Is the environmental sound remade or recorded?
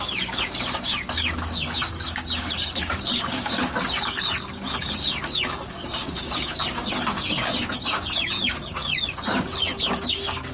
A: remade